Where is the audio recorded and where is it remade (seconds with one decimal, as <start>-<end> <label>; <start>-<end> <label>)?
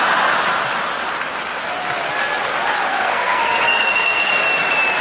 0.0-2.8 recorded; 2.8-4.3 remade; 4.3-5.0 recorded